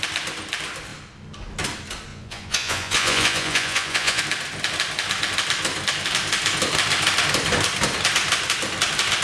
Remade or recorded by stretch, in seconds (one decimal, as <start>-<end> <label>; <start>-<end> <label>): 0.0-2.1 recorded; 2.1-4.2 remade; 4.2-9.2 recorded